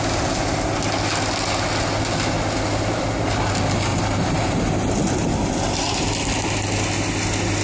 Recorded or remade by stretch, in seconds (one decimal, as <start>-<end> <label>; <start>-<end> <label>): 0.0-3.9 recorded; 3.9-4.6 remade; 4.6-7.6 recorded